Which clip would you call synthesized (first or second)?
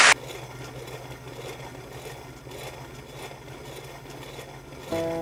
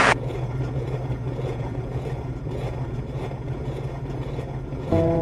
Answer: second